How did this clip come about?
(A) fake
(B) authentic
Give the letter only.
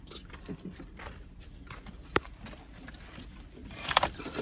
A